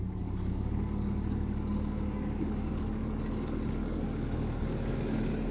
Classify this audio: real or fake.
fake